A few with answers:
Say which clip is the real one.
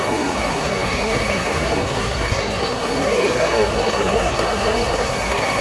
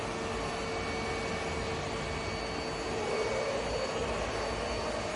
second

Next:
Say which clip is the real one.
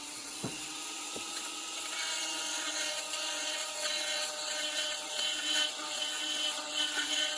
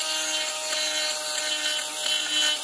second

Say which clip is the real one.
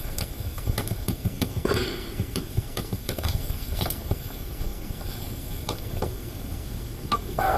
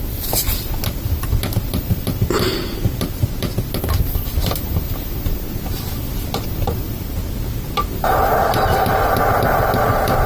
second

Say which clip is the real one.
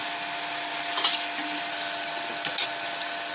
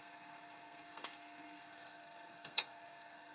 first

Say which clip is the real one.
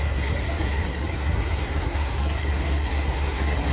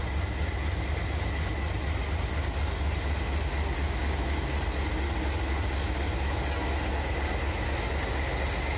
second